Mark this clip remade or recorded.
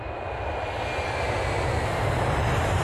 recorded